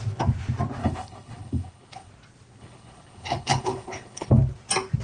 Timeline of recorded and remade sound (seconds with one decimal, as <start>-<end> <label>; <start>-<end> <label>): 0.0-0.8 recorded; 0.8-2.1 remade; 2.1-2.6 recorded; 2.6-4.3 remade; 4.3-5.0 recorded